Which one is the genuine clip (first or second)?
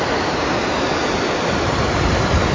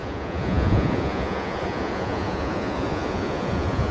first